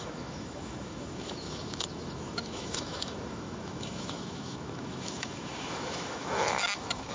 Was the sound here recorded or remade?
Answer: remade